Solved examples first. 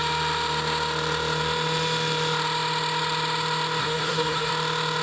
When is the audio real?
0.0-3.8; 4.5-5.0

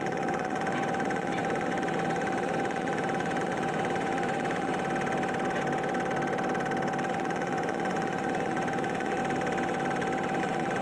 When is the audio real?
4.7-7.1; 9.2-10.4

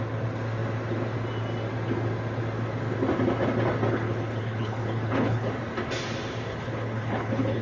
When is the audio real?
0.0-3.9; 5.5-6.5